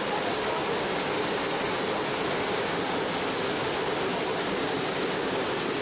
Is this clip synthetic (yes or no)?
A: no